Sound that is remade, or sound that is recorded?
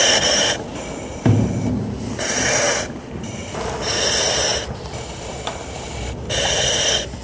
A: recorded